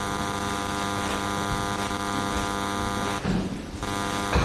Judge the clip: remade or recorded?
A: recorded